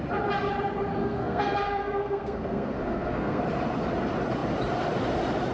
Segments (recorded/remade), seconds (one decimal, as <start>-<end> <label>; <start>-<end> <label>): 0.0-1.0 recorded; 1.0-3.4 remade; 3.4-5.5 recorded